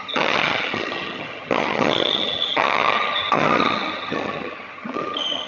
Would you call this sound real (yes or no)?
no